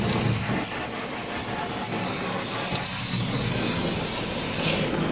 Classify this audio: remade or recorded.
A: recorded